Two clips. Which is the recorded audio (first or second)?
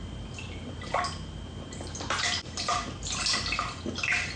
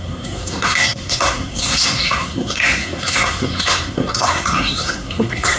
first